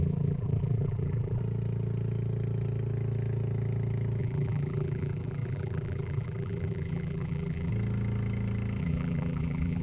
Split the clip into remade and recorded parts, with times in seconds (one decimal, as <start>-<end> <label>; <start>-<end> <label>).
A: 0.0-1.4 remade; 1.4-4.2 recorded; 4.2-7.7 remade; 7.7-8.8 recorded; 8.8-9.8 remade